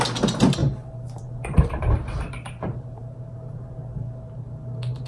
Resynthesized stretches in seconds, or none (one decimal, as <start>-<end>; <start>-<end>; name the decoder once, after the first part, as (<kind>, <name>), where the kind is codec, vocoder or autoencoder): 0.6-3.7 (vocoder, BigVGAN v2)